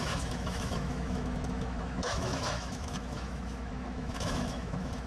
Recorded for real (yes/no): no